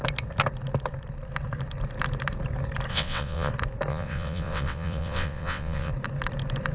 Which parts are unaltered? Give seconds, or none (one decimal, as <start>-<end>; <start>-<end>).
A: 0.0-2.9; 3.5-3.9; 5.9-6.7